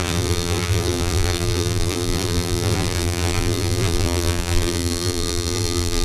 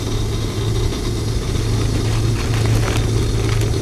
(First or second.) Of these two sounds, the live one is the second